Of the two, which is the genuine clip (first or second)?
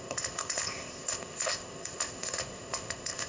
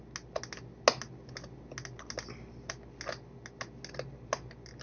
second